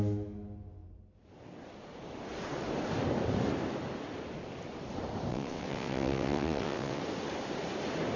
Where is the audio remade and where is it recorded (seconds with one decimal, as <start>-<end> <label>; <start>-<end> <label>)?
0.0-5.3 recorded; 5.3-7.0 remade; 7.0-8.2 recorded